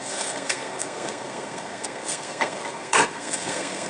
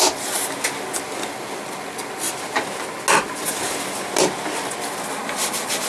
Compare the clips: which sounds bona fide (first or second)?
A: second